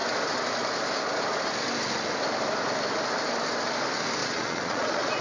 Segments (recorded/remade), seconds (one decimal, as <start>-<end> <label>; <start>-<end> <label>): 0.0-4.2 recorded; 4.2-5.2 remade